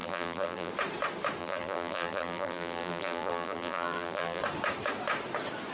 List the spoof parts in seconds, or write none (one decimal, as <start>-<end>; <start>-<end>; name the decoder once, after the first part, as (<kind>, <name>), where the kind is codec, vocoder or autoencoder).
0.0-0.7 (vocoder, BigVGAN v2); 1.4-4.4